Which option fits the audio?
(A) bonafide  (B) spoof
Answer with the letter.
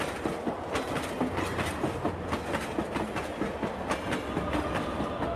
A